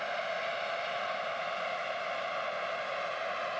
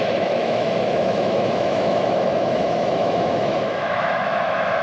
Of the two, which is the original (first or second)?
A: first